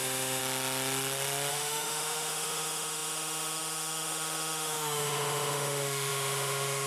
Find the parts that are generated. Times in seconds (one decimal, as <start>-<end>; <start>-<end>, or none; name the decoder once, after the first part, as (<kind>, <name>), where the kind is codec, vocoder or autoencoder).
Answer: 0.0-0.4 (autoencoder, DAC-VAE); 1.5-6.9